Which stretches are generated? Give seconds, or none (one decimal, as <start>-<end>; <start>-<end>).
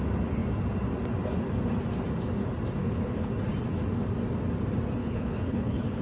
2.8-3.3; 5.0-6.0